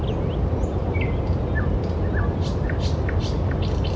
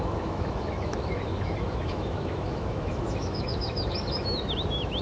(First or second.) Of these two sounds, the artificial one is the second